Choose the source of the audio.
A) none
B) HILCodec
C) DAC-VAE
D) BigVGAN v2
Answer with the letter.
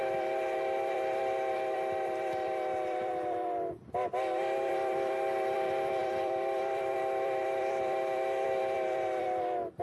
D